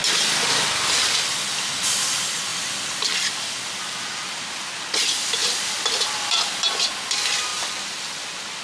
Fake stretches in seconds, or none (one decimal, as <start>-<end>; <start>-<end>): 2.5-3.5; 5.4-6.6; 7.5-8.6